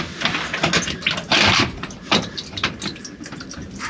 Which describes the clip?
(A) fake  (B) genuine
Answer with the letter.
B